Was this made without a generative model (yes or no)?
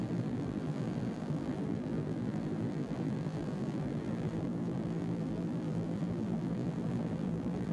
no